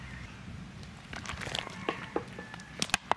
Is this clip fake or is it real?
real